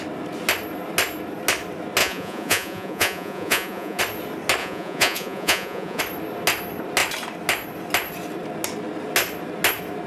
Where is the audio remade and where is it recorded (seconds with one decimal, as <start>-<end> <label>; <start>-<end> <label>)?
0.0-2.0 recorded; 2.0-4.0 remade; 4.0-4.6 recorded; 4.6-6.0 remade; 6.0-10.1 recorded